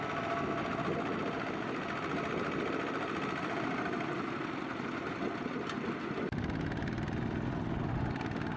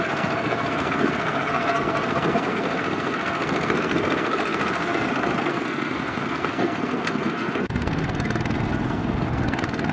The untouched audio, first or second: first